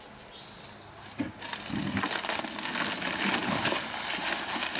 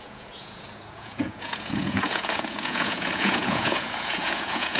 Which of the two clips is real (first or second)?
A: first